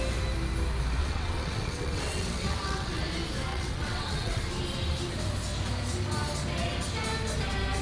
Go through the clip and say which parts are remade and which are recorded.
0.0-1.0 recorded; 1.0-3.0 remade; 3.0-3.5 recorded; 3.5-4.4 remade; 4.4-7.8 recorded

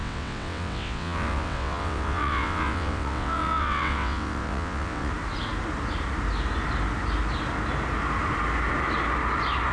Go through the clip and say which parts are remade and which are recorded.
0.0-5.1 remade; 5.1-9.7 recorded

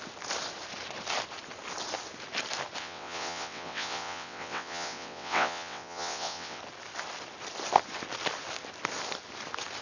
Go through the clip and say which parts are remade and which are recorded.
0.0-2.8 recorded; 2.8-6.6 remade; 6.6-9.8 recorded

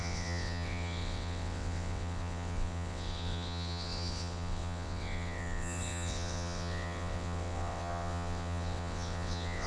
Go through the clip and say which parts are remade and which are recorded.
0.0-9.7 remade